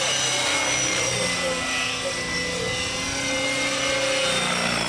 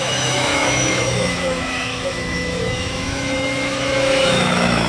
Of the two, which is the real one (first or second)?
first